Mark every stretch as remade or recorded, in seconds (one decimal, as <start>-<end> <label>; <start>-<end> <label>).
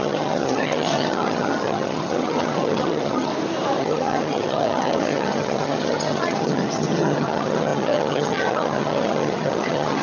0.0-3.3 remade; 3.3-3.8 recorded; 3.8-10.0 remade